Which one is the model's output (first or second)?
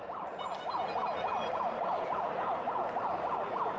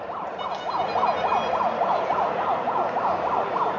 first